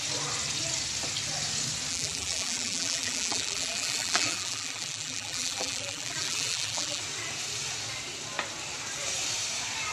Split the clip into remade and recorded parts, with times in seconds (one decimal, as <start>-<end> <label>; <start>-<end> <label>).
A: 0.0-1.9 recorded; 1.9-7.0 remade; 7.0-9.9 recorded